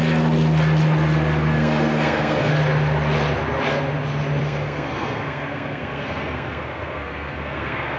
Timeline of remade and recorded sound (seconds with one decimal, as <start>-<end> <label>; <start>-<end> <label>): 0.0-1.5 recorded; 1.5-2.5 remade; 2.5-4.4 recorded; 4.4-8.0 remade